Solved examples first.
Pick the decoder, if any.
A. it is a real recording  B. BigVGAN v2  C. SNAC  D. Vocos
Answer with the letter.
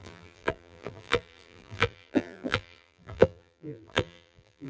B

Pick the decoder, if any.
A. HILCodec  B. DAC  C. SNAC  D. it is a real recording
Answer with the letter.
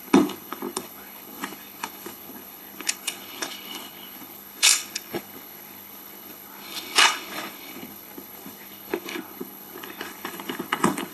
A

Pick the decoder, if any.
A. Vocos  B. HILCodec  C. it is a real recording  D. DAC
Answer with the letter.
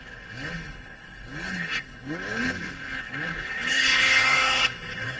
B